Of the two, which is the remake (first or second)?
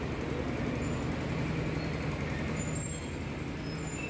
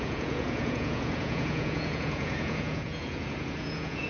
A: second